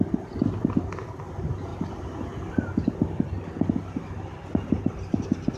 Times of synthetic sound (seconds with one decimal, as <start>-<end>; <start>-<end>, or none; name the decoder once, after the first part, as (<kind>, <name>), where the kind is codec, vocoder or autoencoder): none